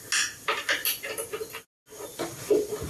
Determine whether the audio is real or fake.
real